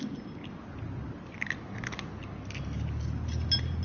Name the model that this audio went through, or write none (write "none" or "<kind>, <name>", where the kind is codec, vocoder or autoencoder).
none